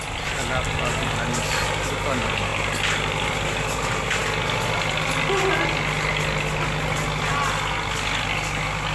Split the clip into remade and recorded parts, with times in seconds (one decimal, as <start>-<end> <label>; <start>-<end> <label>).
0.0-8.9 recorded